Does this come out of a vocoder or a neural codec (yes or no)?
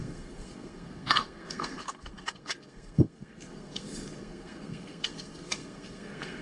yes